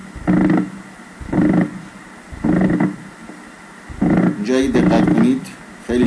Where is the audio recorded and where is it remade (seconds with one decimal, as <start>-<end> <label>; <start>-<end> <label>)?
0.0-6.1 recorded